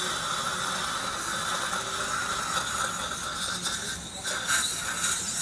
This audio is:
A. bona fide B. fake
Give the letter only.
A